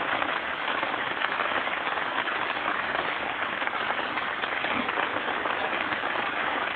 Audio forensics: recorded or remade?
remade